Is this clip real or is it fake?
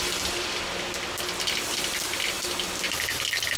real